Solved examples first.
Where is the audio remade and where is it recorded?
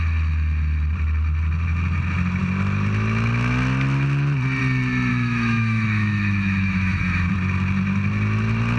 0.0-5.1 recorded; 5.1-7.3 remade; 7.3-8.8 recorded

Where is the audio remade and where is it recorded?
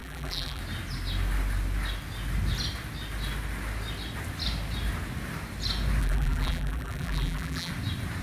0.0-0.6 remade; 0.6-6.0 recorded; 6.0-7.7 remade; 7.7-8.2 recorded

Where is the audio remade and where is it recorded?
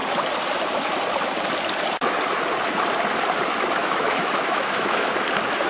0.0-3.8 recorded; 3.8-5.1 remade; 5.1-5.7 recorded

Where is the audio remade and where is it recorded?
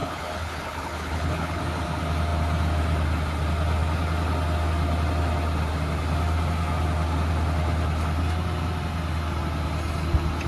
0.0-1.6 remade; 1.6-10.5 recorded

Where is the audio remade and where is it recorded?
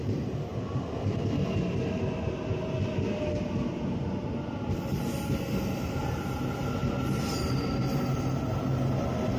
0.0-9.4 recorded